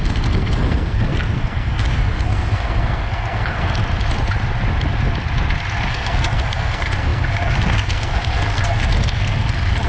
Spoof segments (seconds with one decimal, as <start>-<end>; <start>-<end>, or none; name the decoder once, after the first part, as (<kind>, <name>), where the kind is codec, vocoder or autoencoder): 0.0-3.8 (codec, SNAC); 5.9-9.9